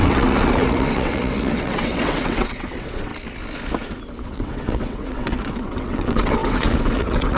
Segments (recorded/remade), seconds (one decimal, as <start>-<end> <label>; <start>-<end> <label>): 0.0-3.1 remade; 3.1-4.2 recorded; 4.2-7.4 remade